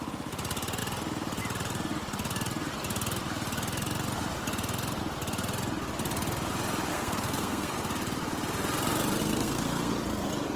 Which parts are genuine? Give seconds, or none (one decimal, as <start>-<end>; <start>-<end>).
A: 0.0-6.9; 7.7-9.2; 9.9-10.6